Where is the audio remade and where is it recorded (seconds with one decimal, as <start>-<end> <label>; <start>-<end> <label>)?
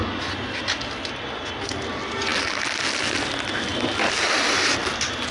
0.0-5.3 recorded